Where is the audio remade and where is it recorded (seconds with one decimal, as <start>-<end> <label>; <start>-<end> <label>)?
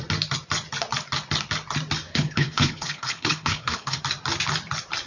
0.0-2.1 recorded; 2.1-4.0 remade; 4.0-5.1 recorded